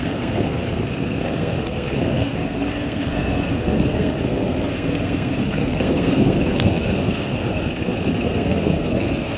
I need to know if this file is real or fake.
fake